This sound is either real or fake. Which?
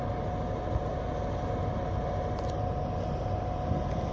real